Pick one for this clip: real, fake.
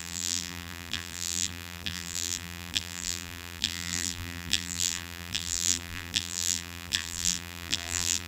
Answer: fake